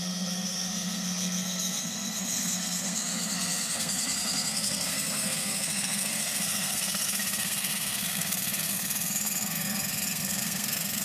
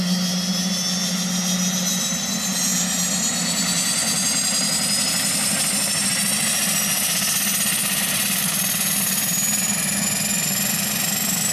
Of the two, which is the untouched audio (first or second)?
second